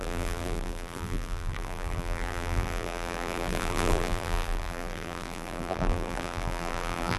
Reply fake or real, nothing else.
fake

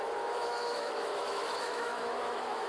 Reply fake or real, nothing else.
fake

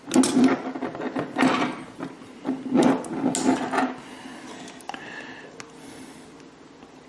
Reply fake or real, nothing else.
real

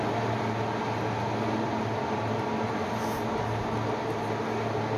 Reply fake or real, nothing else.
real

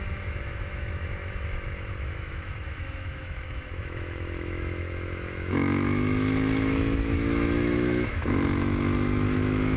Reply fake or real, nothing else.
fake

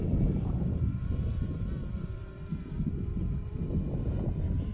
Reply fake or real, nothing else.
fake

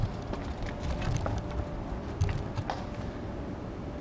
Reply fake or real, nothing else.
real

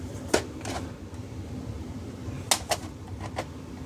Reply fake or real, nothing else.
real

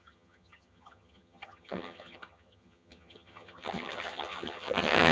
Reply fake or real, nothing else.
fake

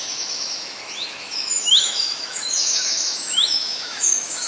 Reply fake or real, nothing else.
fake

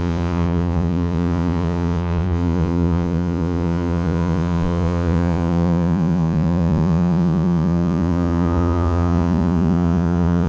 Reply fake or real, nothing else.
fake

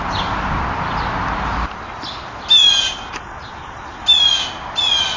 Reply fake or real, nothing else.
real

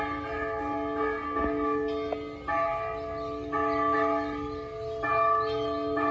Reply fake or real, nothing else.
real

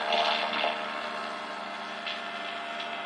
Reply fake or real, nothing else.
real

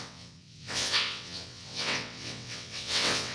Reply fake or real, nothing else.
fake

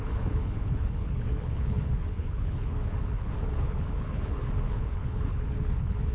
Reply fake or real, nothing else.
fake